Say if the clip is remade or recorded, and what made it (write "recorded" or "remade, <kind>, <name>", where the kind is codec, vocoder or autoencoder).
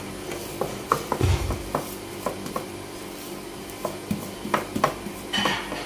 recorded